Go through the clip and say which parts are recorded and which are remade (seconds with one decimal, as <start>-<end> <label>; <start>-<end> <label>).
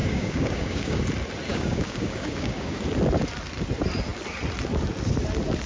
0.0-1.0 remade; 1.0-1.5 recorded; 1.5-2.8 remade; 2.8-5.7 recorded